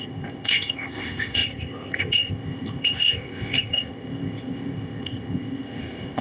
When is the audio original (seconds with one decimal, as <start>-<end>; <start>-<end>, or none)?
none